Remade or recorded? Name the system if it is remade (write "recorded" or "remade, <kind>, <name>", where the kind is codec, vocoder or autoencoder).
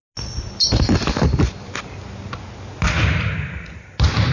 recorded